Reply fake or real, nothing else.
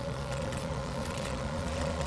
fake